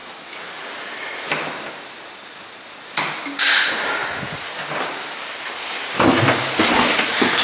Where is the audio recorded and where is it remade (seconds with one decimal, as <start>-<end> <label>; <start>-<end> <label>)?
0.0-7.4 recorded